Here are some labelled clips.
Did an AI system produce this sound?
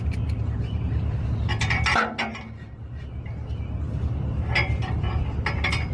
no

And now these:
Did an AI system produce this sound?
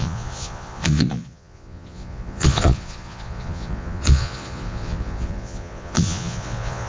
yes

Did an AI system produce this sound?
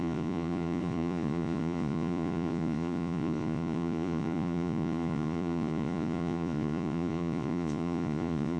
yes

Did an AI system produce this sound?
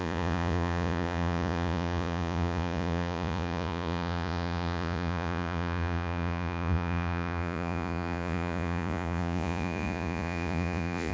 yes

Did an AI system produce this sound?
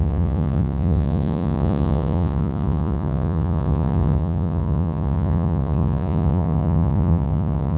yes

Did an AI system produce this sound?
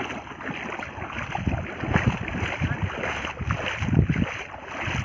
no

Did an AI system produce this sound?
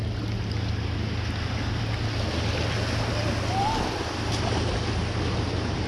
no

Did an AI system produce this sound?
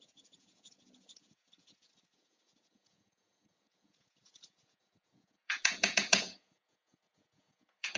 yes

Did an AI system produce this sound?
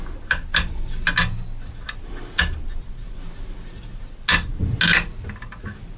no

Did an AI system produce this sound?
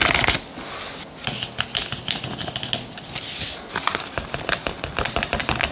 no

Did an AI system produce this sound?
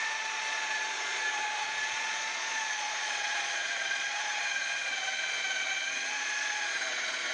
yes